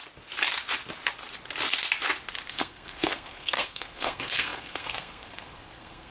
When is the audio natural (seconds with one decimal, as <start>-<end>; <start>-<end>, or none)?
0.0-2.5